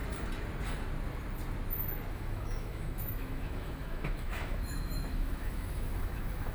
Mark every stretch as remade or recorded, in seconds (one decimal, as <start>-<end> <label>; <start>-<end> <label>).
0.0-2.1 recorded; 2.1-6.5 remade